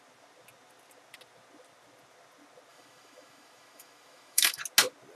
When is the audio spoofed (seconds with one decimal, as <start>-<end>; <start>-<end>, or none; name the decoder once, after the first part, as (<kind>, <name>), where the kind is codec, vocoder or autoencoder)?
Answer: 2.7-4.6 (autoencoder, DAC-VAE)